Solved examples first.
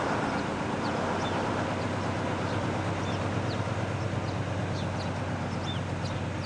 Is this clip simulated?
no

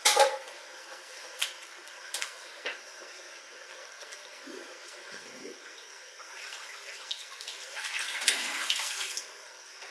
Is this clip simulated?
yes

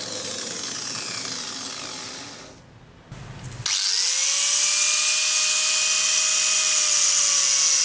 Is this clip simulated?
no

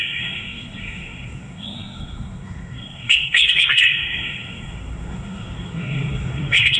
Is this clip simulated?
yes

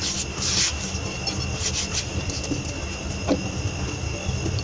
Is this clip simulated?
no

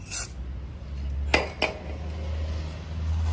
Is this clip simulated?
no